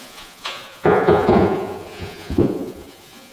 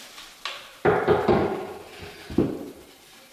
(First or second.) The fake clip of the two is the first